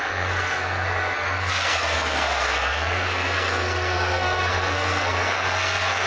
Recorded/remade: remade